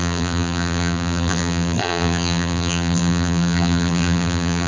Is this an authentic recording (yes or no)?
no